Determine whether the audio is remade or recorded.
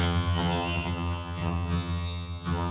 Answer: remade